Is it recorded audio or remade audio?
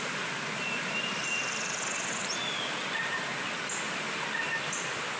recorded